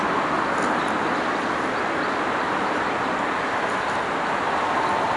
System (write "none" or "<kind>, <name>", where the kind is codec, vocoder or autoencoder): none